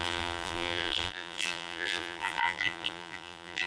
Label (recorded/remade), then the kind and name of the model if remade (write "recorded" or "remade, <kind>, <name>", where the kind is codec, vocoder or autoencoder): remade, vocoder, BigVGAN v2